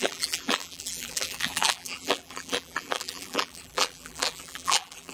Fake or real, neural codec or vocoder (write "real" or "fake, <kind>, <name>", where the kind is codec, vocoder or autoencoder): fake, vocoder, BigVGAN v2